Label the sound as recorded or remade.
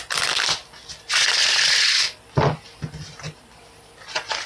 recorded